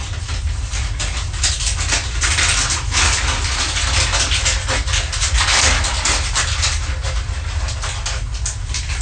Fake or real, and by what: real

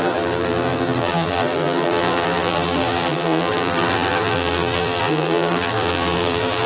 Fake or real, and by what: fake, vocoder, BigVGAN v2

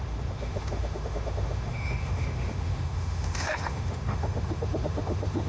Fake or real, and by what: fake, autoencoder, DAC-VAE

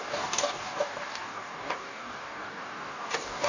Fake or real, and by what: fake, codec, DAC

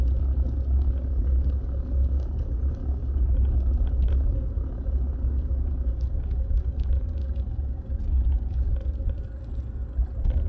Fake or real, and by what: real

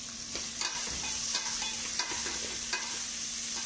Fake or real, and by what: real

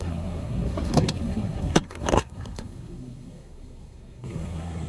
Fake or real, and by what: fake, codec, SNAC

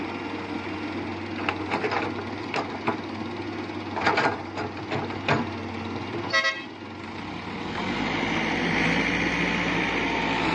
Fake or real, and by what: real